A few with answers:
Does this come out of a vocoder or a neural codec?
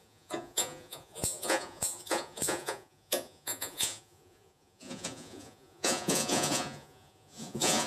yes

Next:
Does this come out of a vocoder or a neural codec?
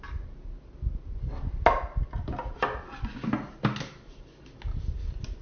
no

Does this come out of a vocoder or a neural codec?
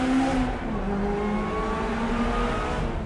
no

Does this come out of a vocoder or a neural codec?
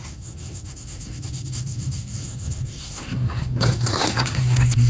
yes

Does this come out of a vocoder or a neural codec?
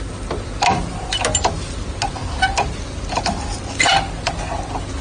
no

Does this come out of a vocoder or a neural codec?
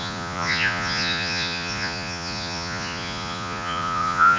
yes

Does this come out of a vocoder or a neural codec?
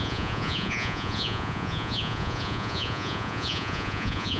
yes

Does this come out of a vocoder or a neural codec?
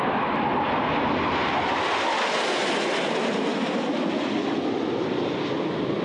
no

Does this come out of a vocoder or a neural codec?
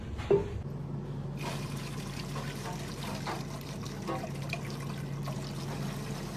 no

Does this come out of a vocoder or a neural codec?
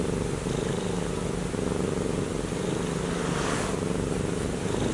no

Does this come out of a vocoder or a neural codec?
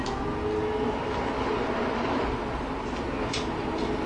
no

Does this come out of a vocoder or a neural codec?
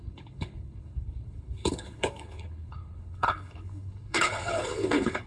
yes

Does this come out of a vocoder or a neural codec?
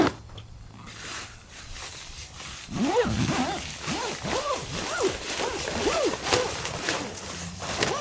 no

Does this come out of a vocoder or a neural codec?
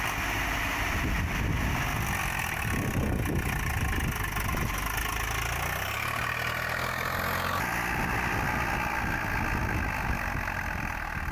no